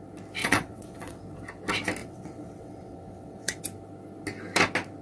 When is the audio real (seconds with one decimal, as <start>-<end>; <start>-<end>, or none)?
0.0-0.4; 1.2-2.0; 3.6-5.0